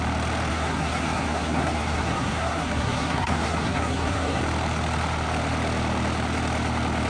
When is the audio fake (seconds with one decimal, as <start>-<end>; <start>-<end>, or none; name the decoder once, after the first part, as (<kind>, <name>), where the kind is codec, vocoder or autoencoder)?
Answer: 0.5-4.4 (codec, SNAC)